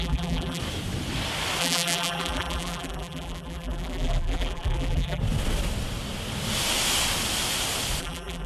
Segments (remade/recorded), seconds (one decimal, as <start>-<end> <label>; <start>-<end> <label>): 0.0-0.6 remade; 0.6-1.6 recorded; 1.6-5.2 remade; 5.2-8.0 recorded; 8.0-8.5 remade